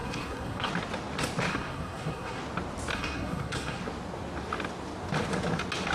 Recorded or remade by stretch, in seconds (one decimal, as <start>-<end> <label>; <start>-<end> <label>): 0.0-0.7 remade; 0.7-1.5 recorded; 1.5-2.4 remade; 2.4-2.9 recorded; 2.9-3.8 remade; 3.8-5.9 recorded